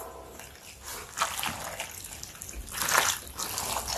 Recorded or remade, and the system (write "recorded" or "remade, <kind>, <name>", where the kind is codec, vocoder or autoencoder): recorded